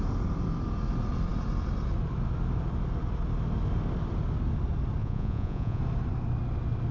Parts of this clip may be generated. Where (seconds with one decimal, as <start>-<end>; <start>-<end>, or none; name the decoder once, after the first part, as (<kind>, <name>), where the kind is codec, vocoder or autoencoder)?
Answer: 5.0-5.8 (vocoder, Vocos)